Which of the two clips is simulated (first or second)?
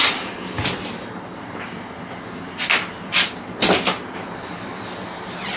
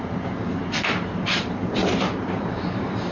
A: second